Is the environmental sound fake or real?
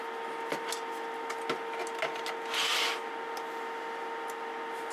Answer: real